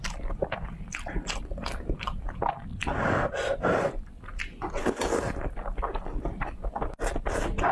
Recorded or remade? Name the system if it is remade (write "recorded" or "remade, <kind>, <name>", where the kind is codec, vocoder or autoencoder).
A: remade, vocoder, BigVGAN v2